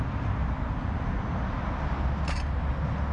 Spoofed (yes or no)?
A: no